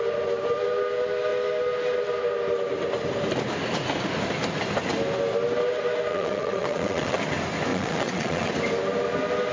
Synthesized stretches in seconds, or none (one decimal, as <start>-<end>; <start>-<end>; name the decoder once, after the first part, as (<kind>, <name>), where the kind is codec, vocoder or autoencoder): 6.1-7.2 (vocoder, WaveNeXt); 7.7-8.5